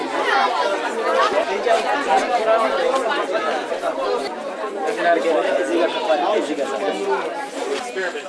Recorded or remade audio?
recorded